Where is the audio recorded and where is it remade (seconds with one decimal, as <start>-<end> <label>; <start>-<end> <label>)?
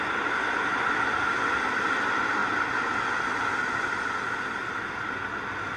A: 0.0-5.8 recorded